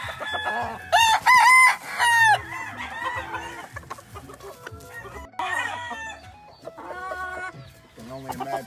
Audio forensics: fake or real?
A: real